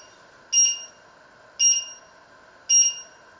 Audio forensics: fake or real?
real